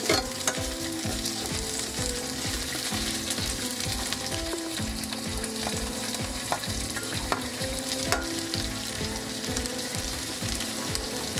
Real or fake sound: fake